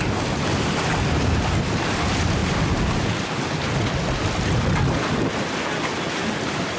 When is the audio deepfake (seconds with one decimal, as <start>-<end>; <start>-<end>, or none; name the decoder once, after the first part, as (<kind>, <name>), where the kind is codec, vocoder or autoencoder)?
none